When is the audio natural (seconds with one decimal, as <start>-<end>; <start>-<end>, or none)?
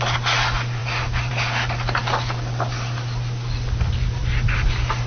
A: 0.0-5.1